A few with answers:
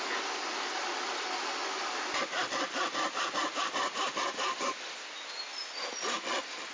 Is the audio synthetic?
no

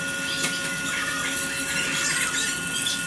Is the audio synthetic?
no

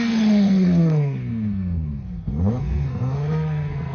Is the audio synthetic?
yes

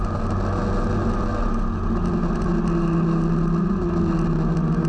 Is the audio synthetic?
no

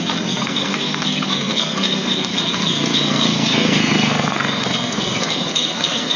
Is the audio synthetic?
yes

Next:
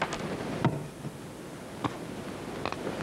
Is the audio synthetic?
no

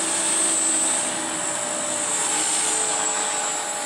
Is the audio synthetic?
no